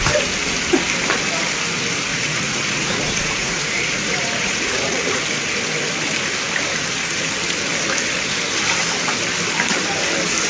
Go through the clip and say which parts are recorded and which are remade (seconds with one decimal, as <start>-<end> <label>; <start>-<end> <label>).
0.0-2.1 recorded; 2.1-5.2 remade; 5.2-10.5 recorded